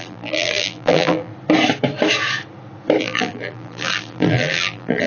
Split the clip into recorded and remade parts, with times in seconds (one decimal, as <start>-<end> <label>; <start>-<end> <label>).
0.0-1.3 remade; 1.3-3.0 recorded; 3.0-5.1 remade